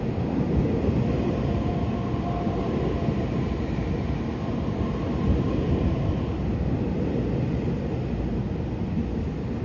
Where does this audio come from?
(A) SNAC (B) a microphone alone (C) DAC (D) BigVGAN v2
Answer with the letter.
B